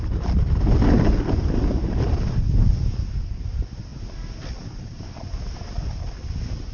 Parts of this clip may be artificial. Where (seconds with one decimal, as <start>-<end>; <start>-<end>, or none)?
none